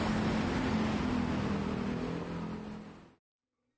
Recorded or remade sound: recorded